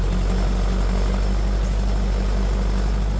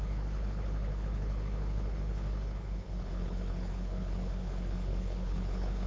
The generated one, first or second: second